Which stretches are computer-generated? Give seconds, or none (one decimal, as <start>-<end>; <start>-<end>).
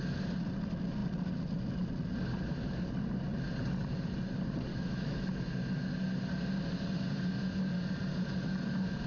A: 4.7-5.2